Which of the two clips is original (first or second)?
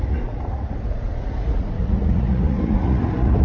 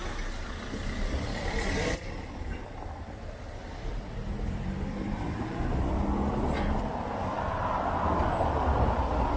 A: second